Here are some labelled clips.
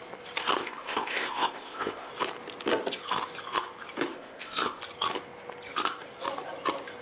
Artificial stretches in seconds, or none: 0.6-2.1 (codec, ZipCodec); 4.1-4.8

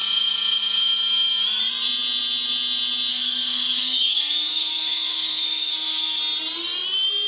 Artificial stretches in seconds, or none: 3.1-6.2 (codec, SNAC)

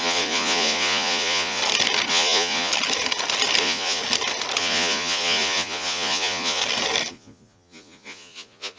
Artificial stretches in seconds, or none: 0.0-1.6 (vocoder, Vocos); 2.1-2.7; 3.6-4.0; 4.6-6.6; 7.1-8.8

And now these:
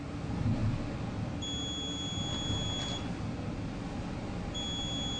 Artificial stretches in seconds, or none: none

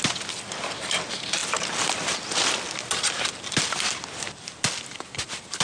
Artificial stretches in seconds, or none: none

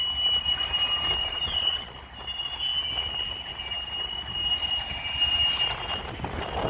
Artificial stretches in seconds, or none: 1.2-2.0 (vocoder, Vocos)

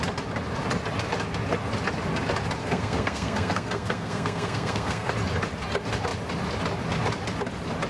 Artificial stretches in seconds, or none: 2.6-5.1 (codec, SNAC)

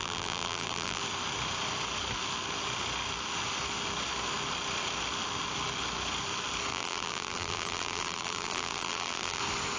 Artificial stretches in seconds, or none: 0.0-1.0 (vocoder, BigVGAN v2); 6.7-9.4